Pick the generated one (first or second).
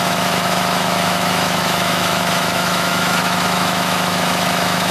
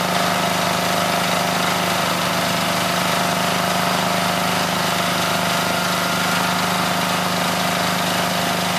first